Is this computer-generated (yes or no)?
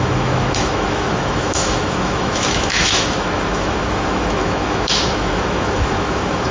yes